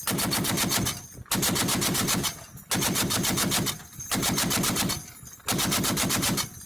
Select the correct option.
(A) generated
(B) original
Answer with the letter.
B